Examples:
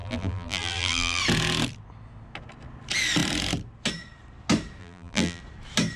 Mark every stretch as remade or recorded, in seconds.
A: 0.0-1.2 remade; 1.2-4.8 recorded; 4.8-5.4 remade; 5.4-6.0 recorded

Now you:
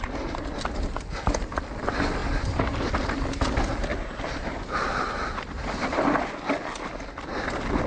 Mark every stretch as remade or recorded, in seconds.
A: 0.0-2.2 recorded; 2.2-2.9 remade; 2.9-3.9 recorded; 3.9-6.3 remade; 6.3-7.9 recorded